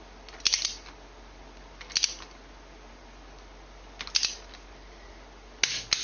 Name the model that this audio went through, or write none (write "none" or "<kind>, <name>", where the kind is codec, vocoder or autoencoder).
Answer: none